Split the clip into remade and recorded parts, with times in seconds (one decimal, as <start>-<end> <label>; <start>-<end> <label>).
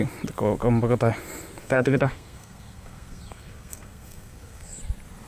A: 0.0-1.6 recorded; 1.6-4.8 remade; 4.8-5.3 recorded